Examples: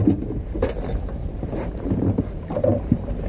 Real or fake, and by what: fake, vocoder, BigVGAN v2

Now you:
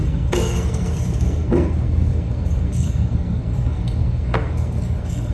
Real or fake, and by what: fake, codec, SNAC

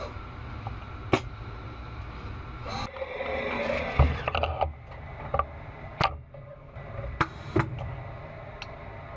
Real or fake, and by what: real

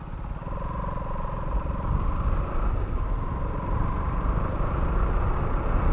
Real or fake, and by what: real